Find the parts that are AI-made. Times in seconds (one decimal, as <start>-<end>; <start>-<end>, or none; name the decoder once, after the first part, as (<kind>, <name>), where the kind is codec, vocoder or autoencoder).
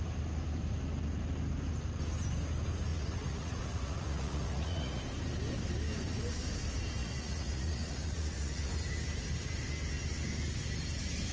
2.9-5.0 (vocoder, Vocos); 7.0-8.7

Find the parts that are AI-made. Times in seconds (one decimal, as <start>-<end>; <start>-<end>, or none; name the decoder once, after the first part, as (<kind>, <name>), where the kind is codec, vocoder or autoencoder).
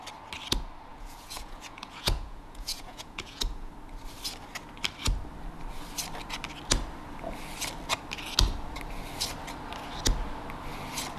0.9-3.7 (vocoder, Vocos)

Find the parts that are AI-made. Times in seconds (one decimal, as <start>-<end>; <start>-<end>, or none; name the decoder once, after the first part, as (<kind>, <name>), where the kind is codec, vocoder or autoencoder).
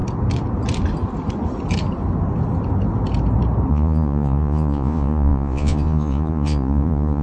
3.7-7.2 (vocoder, Vocos)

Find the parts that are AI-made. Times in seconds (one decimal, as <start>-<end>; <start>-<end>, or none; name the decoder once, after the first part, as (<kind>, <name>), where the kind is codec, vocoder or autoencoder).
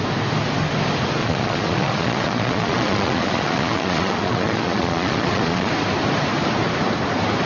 1.2-5.7 (vocoder, Vocos)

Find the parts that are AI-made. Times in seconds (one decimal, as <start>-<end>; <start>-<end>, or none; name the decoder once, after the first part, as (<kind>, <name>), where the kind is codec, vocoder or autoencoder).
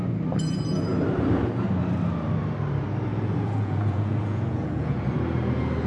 3.1-5.0 (vocoder, Vocos)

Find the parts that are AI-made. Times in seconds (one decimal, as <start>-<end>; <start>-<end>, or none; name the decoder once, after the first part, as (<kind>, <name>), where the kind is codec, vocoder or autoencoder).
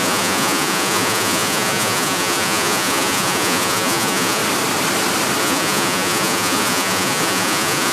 0.0-4.4 (vocoder, Vocos); 5.4-7.9